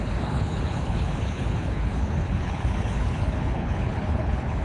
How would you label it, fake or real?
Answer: fake